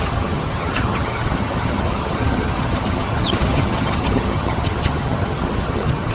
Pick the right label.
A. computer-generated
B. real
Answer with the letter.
A